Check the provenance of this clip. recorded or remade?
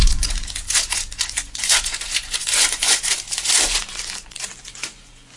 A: remade